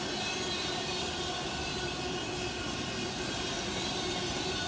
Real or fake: real